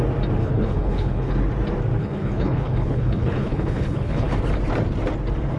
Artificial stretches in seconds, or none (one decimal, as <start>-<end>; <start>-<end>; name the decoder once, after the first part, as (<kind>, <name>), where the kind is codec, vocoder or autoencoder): 0.4-1.3 (codec, HILCodec); 2.0-4.3